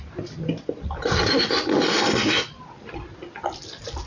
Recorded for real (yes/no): yes